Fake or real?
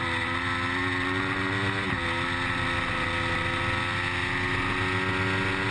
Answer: real